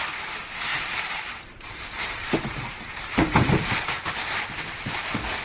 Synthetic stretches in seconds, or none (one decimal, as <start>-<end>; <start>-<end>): 0.7-3.9